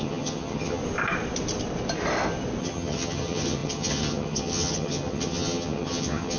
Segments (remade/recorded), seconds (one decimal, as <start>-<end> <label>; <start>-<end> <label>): 0.0-0.8 remade; 0.8-2.6 recorded; 2.6-6.4 remade